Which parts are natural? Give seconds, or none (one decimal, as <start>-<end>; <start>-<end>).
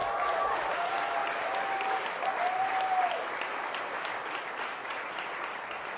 0.0-4.8; 5.5-6.0